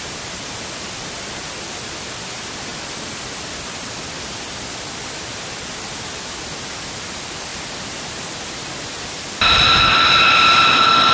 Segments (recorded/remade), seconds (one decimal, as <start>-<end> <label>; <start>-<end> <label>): 0.0-11.1 recorded